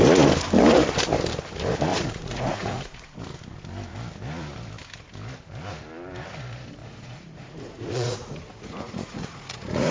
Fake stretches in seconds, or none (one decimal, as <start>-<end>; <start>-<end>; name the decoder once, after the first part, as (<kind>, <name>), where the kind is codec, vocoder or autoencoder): 1.9-3.2 (vocoder, Vocos); 6.8-9.9

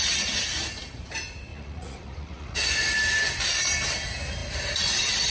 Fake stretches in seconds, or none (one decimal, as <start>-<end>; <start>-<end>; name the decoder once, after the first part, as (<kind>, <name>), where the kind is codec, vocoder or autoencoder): 1.5-2.7 (vocoder, Vocos)

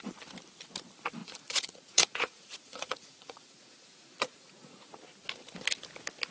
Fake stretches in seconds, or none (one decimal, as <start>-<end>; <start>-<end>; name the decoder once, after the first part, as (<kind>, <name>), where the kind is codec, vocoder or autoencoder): 1.2-5.0 (vocoder, Vocos)

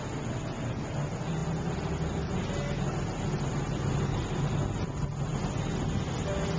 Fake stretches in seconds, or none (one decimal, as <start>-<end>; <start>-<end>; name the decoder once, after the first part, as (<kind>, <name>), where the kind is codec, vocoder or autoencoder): none

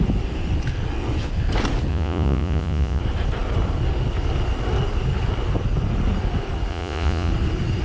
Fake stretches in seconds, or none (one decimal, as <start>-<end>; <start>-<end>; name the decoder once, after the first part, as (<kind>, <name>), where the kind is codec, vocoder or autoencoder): 1.9-3.0 (vocoder, Vocos); 6.7-7.3

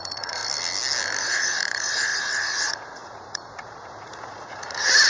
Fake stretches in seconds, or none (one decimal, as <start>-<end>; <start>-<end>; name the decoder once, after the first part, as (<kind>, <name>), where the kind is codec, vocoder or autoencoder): 0.0-0.4 (vocoder, Vocos); 1.2-5.1

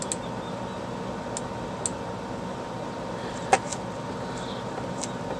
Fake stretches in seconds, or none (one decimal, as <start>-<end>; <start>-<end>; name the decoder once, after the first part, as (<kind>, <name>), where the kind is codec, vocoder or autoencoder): none